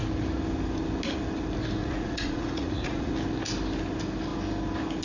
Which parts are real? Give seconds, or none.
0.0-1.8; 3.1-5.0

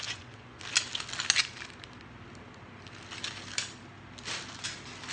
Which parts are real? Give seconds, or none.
0.6-5.1

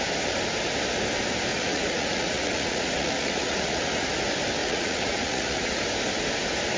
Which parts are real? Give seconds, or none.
0.0-1.5; 4.1-4.6; 5.8-6.8

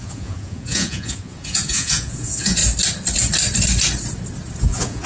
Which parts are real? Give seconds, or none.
2.6-4.6

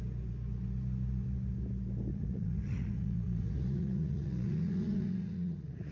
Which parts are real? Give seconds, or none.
0.0-2.1